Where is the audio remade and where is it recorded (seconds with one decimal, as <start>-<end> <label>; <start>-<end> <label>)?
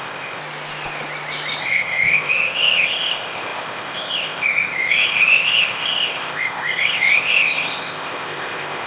0.0-0.4 remade; 0.4-1.6 recorded; 1.6-8.9 remade